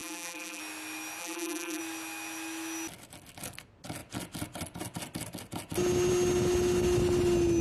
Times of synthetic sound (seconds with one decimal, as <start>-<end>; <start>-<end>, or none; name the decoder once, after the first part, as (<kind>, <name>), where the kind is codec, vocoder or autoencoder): 0.0-0.6 (vocoder, BigVGAN v2); 1.2-1.8